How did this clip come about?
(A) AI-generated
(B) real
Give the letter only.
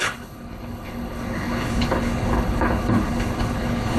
A